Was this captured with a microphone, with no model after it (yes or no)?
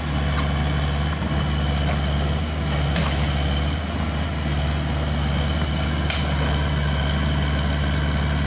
yes